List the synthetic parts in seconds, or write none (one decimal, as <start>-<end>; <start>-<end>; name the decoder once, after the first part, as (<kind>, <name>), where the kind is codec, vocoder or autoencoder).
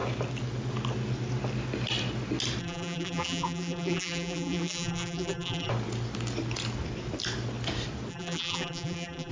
2.6-5.7 (vocoder, BigVGAN v2); 8.1-9.3